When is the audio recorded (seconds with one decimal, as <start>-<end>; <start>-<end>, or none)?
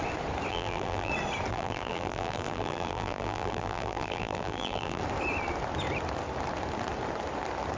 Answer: 0.0-0.5; 1.1-1.5; 5.0-7.8